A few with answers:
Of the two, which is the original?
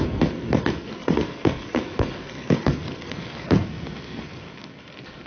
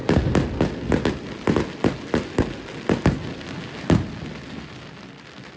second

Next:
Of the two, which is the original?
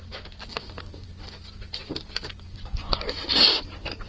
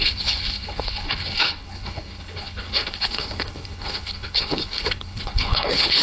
first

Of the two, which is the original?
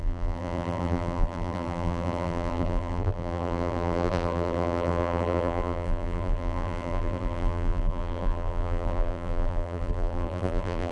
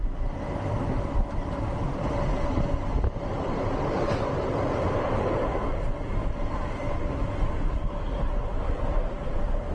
second